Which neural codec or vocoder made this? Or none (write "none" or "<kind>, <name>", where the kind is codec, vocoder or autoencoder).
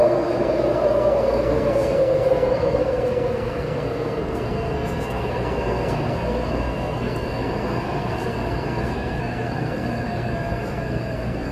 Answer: codec, SNAC